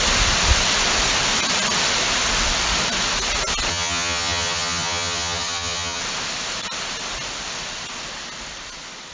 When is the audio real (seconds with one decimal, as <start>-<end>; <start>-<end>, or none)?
0.0-3.7; 6.0-9.1